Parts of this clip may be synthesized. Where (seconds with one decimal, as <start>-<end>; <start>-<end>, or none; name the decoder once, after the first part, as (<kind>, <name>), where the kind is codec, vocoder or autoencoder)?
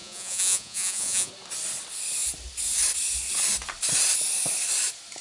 0.0-1.3 (vocoder, Vocos)